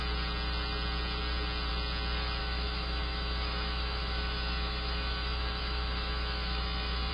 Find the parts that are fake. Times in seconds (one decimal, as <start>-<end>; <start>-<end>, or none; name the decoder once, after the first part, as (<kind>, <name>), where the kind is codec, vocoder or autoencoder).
2.4-7.1 (autoencoder, DAC-VAE)